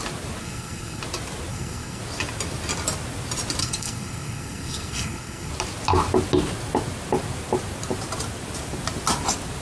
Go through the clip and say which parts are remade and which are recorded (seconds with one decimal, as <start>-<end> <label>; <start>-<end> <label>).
0.0-0.4 recorded; 0.4-1.0 remade; 1.0-1.5 recorded; 1.5-2.0 remade; 2.0-3.6 recorded; 3.6-5.5 remade; 5.5-9.6 recorded